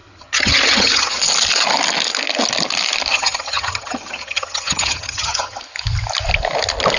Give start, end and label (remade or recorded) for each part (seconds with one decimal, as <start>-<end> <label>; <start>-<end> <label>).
0.0-1.2 remade; 1.2-3.1 recorded; 3.1-5.6 remade; 5.6-7.0 recorded